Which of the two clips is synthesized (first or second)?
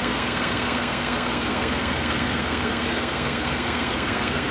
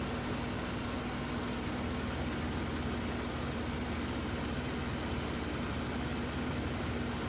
first